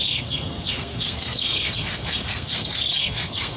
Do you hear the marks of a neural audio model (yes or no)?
yes